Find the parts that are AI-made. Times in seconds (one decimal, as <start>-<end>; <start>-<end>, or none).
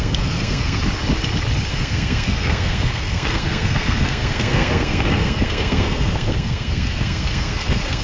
0.0-0.8; 1.7-8.0